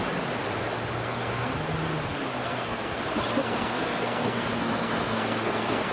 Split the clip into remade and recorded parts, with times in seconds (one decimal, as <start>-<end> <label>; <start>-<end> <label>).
0.0-1.0 recorded; 1.0-1.6 remade; 1.6-2.4 recorded; 2.4-3.0 remade; 3.0-3.4 recorded; 3.4-5.9 remade